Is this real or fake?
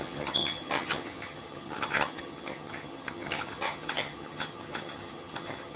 fake